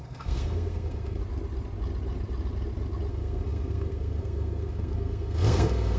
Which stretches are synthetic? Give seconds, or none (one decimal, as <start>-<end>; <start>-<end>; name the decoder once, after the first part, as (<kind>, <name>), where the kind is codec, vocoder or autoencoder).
0.0-1.2 (codec, SNAC); 3.1-6.0